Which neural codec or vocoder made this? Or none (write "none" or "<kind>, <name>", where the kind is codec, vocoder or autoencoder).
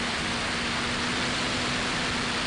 none